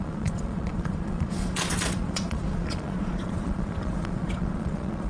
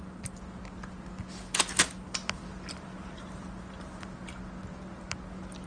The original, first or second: second